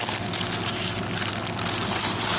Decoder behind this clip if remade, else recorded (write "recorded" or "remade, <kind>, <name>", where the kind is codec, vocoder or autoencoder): recorded